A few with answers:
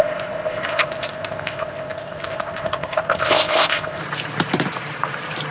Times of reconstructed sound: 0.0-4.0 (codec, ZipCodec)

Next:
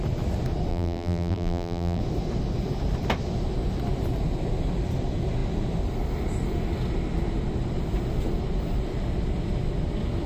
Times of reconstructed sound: 0.7-2.0 (vocoder, BigVGAN v2)

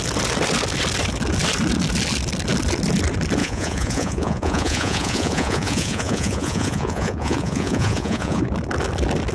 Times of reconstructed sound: 3.4-8.4 (vocoder, Vocos)

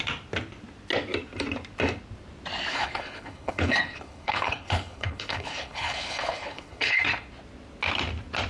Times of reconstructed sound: 2.7-7.0 (codec, HILCodec)

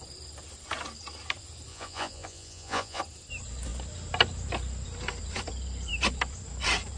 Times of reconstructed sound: 1.7-3.0 (vocoder, Vocos)

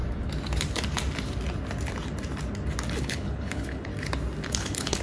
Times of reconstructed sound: 3.0-3.9 (codec, HILCodec); 4.5-5.0

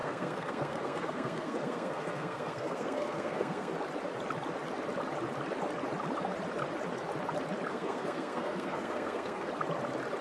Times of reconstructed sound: 0.0-3.7 (codec, SNAC); 7.7-9.5